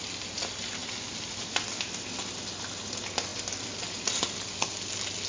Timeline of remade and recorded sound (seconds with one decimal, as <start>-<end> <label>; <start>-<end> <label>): 0.0-5.3 recorded